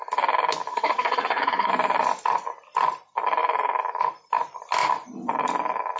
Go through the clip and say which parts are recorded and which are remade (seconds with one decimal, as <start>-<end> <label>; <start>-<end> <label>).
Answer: 0.0-0.7 recorded; 0.7-1.7 remade; 1.7-6.0 recorded